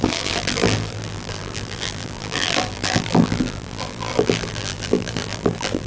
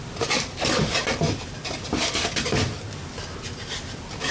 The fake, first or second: first